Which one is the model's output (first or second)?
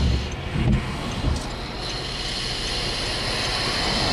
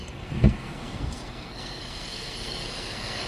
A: second